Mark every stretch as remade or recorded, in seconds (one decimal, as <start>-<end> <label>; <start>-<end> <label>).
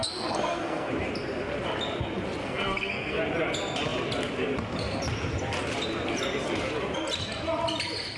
0.0-0.9 remade; 0.9-2.4 recorded; 2.4-3.2 remade; 3.2-8.2 recorded